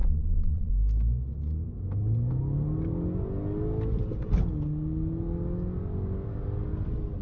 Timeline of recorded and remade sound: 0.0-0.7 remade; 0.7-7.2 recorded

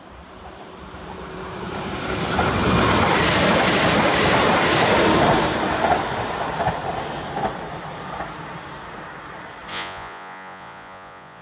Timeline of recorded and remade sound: 0.0-9.7 recorded; 9.7-11.4 remade

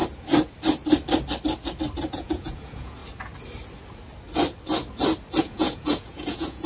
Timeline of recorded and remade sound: 0.0-2.1 recorded; 2.1-3.0 remade; 3.0-5.4 recorded; 5.4-6.7 remade

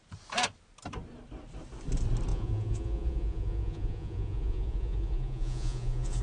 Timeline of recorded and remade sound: 0.0-2.3 recorded; 2.3-6.2 remade